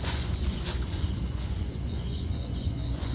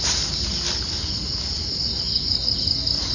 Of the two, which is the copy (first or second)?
first